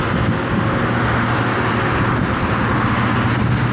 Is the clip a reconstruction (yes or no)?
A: no